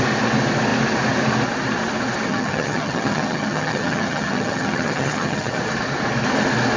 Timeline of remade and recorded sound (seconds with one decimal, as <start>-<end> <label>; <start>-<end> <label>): 0.0-2.3 recorded; 2.3-5.6 remade; 5.6-6.8 recorded